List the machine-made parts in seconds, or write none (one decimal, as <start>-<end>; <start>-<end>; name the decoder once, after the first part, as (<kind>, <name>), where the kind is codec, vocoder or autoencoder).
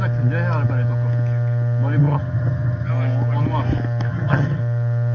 2.0-2.9 (vocoder, HiFi-GAN); 4.1-4.6